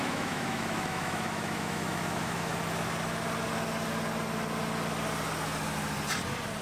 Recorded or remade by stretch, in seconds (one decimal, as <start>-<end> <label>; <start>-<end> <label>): 0.0-2.5 remade; 2.5-6.6 recorded